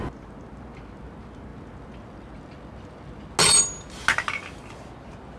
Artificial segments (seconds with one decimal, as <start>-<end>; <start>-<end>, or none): none